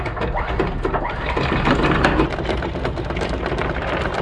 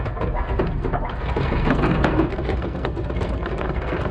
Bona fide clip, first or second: first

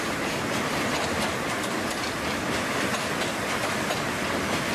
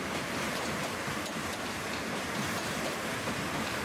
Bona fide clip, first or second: first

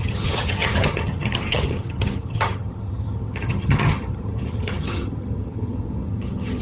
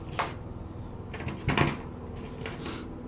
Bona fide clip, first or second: second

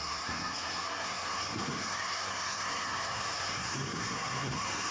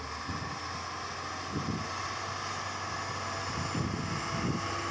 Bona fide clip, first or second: second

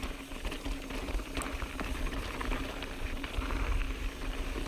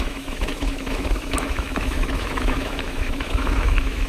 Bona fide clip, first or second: first